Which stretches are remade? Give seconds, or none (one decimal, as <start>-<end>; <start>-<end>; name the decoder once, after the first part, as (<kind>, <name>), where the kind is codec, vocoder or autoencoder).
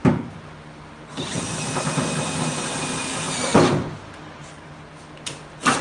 none